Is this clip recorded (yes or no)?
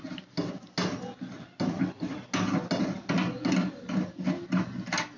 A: yes